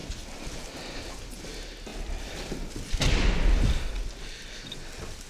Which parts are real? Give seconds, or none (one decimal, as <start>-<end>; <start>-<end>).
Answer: 1.2-1.9; 4.6-5.3